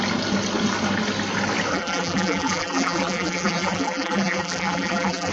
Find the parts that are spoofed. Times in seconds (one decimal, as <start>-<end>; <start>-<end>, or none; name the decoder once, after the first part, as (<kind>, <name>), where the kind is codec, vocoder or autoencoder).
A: 1.7-5.3 (vocoder, BigVGAN v2)